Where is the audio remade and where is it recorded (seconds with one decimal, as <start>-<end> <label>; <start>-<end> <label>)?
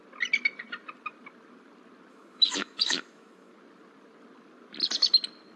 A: 0.0-2.1 recorded; 2.1-3.5 remade; 3.5-5.6 recorded